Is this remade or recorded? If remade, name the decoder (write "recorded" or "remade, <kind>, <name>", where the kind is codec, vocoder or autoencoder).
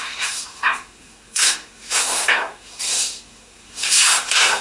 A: remade, codec, SNAC